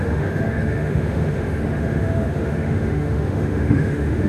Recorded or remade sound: remade